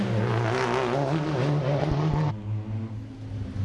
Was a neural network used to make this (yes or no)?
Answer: no